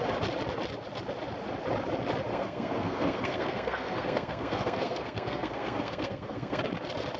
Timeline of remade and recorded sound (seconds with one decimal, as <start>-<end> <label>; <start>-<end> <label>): 0.0-2.3 recorded; 2.3-6.6 remade; 6.6-7.2 recorded

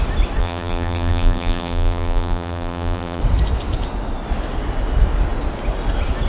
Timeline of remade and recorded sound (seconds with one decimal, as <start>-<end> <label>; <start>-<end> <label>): 0.0-0.4 recorded; 0.4-3.2 remade; 3.2-6.3 recorded